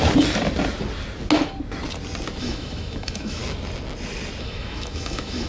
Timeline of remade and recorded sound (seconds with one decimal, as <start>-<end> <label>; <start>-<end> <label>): 0.0-2.4 recorded; 2.4-3.4 remade; 3.4-4.4 recorded; 4.4-5.5 remade